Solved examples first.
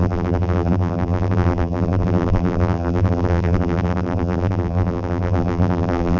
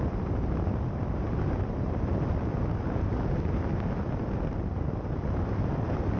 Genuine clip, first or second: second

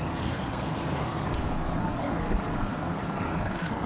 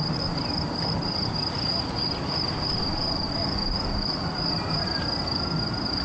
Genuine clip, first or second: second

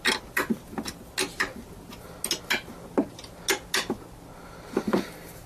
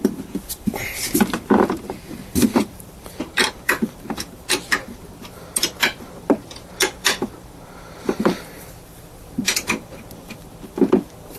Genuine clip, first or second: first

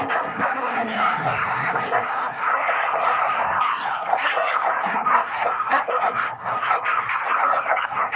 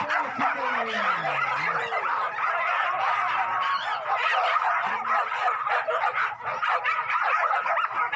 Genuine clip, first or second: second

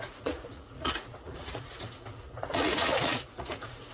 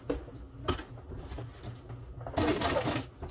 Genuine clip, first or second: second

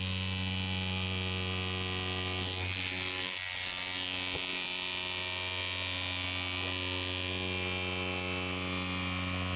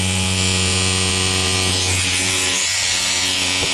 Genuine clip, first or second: first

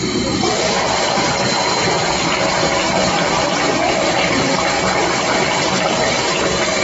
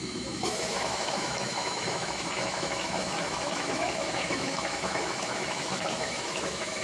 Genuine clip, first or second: first